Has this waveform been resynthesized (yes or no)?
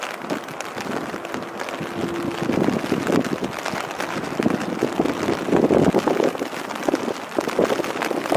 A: no